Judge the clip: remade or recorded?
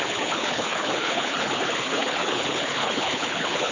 remade